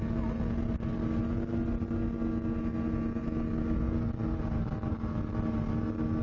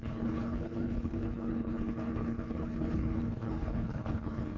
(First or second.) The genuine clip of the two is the first